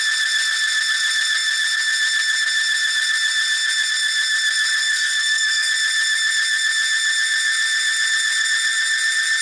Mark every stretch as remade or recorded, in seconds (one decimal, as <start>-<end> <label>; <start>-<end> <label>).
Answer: 0.0-4.8 recorded; 4.8-5.7 remade; 5.7-9.4 recorded